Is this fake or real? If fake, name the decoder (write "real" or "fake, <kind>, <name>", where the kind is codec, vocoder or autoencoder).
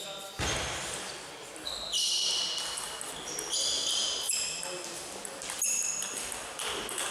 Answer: real